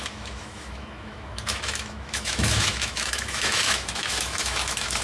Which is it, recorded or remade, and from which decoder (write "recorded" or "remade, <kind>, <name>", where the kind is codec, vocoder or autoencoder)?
remade, autoencoder, DAC-VAE